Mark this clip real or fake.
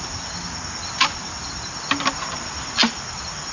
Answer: real